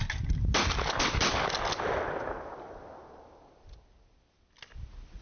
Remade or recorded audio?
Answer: recorded